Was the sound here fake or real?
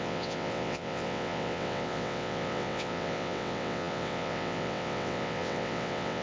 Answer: fake